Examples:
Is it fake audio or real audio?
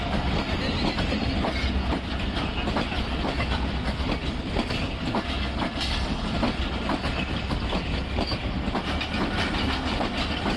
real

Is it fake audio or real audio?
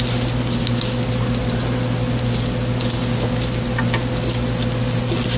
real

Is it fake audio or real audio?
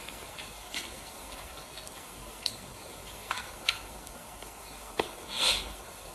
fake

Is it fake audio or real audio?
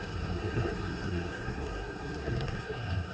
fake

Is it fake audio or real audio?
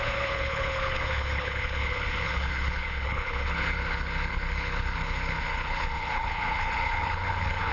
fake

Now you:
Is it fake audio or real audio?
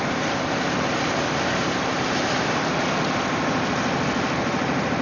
real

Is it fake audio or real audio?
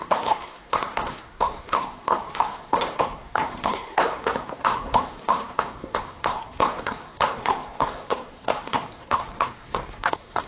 fake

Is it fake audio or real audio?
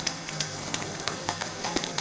fake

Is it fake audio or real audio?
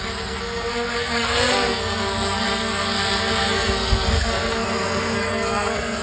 fake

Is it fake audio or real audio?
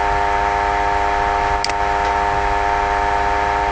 real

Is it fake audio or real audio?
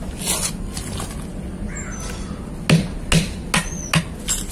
real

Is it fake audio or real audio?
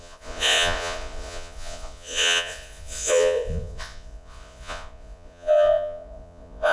fake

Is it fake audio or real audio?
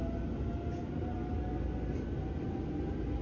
real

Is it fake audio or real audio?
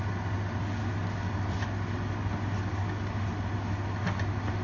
real